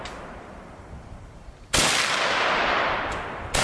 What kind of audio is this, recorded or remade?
recorded